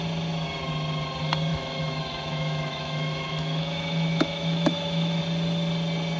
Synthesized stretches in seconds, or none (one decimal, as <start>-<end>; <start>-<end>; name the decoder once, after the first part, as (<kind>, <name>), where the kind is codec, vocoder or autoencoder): 1.5-5.2 (autoencoder, DAC-VAE)

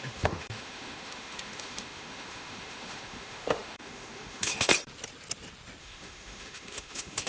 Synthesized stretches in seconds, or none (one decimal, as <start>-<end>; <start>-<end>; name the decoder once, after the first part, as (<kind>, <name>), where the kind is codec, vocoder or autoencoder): 0.0-4.7 (autoencoder, DAC-VAE); 5.8-7.3

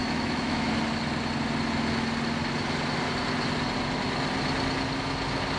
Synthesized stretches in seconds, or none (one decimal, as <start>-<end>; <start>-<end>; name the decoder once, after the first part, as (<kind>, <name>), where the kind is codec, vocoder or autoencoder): 0.0-0.7 (autoencoder, DAC-VAE)

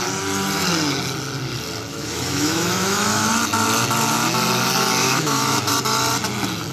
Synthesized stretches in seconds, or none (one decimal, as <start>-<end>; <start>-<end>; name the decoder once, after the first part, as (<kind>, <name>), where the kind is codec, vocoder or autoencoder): 1.9-3.3 (autoencoder, DAC-VAE); 5.0-5.7

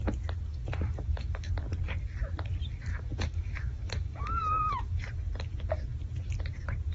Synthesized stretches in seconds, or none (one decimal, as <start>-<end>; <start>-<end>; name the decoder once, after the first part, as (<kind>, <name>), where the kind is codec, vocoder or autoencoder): 0.5-1.5 (autoencoder, DAC-VAE); 2.9-5.0

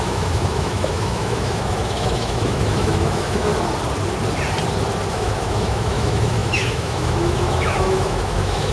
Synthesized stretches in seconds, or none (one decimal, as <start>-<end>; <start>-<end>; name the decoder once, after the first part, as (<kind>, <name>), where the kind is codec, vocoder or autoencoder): 0.0-3.5 (autoencoder, DAC-VAE); 5.1-8.7

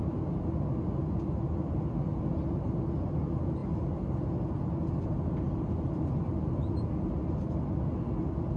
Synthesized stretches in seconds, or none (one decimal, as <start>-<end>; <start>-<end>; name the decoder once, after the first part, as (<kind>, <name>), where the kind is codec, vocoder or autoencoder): none

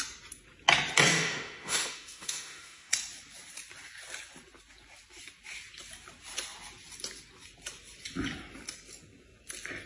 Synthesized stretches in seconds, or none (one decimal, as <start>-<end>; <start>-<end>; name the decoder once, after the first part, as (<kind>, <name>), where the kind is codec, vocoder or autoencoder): 1.1-2.9 (autoencoder, DAC-VAE)